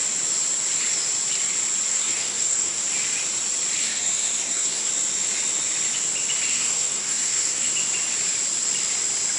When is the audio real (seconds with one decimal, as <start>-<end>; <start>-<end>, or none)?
0.0-1.9; 2.8-3.8; 4.9-6.5; 7.7-9.4